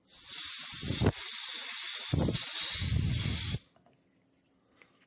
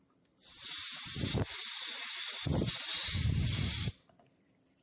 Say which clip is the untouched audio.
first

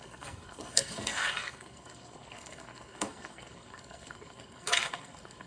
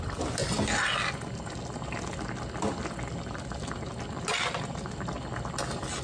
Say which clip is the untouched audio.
second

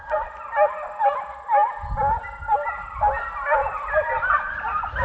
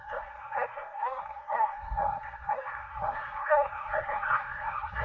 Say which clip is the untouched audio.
first